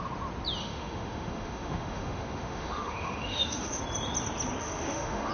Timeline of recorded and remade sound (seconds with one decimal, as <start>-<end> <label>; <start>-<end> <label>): 0.0-0.6 recorded; 0.6-3.8 remade; 3.8-4.6 recorded; 4.6-5.3 remade